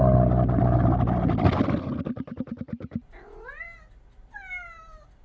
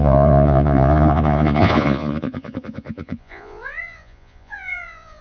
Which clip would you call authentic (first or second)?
first